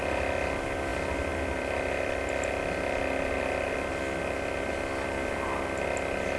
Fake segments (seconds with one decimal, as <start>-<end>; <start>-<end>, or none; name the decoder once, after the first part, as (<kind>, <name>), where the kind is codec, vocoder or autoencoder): none